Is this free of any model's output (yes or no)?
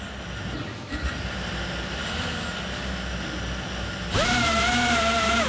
yes